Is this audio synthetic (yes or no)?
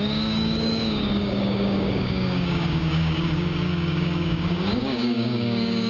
yes